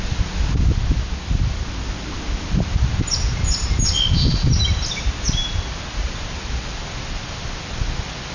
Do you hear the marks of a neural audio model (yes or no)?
no